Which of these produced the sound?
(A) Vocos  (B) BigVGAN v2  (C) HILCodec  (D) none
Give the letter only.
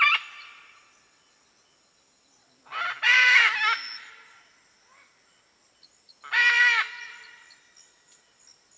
D